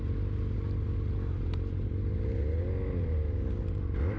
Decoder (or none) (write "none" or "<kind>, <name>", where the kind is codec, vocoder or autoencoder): none